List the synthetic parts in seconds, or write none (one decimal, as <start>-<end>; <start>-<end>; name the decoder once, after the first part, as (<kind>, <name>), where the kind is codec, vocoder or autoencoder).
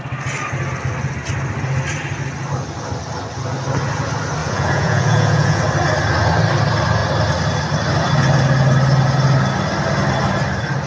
4.4-5.6 (vocoder, Vocos)